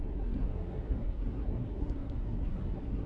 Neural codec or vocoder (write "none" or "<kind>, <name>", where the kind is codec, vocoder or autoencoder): codec, SNAC